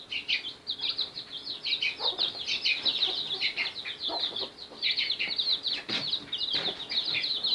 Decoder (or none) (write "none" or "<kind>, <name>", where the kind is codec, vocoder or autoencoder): none